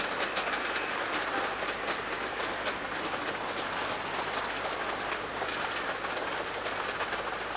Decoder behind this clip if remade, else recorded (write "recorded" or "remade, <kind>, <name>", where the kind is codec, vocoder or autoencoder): recorded